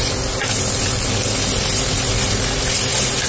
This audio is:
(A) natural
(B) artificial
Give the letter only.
A